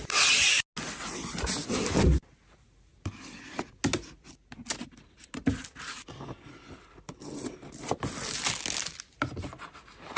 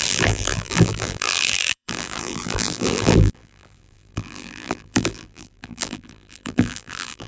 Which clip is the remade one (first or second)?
second